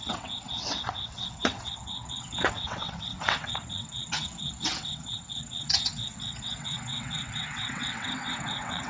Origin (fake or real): fake